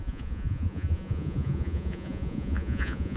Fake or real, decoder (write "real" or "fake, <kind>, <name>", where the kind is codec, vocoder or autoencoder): fake, vocoder, Vocos